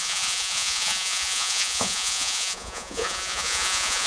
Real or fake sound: fake